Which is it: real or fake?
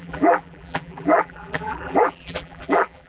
fake